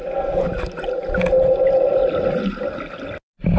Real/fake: real